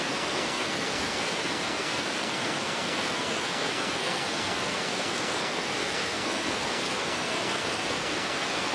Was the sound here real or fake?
fake